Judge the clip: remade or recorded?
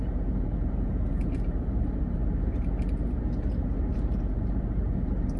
remade